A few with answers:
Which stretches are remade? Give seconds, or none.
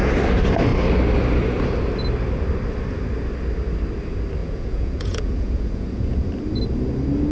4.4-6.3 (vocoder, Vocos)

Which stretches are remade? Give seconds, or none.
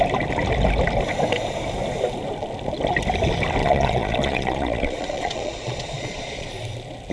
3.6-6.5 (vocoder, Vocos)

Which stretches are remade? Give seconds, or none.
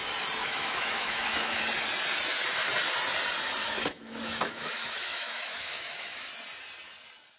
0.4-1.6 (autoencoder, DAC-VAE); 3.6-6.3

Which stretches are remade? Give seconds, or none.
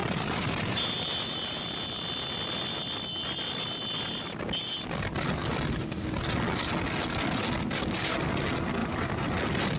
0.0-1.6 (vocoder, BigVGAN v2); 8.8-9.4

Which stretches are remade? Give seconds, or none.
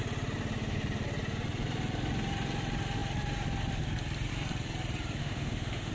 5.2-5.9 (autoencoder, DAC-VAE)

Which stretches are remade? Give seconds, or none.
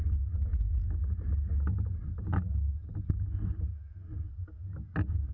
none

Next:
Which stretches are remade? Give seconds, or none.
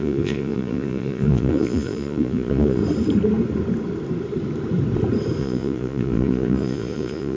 0.0-2.8 (vocoder, Vocos); 5.4-7.4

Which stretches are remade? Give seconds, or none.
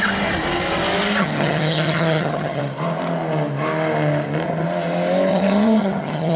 1.2-2.6 (vocoder, HiFi-GAN); 5.3-6.4